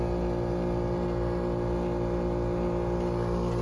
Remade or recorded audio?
recorded